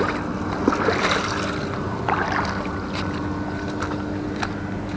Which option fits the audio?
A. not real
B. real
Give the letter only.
B